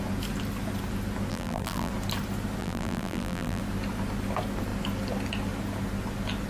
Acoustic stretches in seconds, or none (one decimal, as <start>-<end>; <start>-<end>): 0.0-1.3; 1.9-2.6; 3.6-6.5